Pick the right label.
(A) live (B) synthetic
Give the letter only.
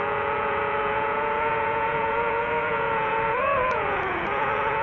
B